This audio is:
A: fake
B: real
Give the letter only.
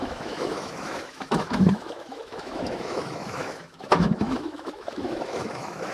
A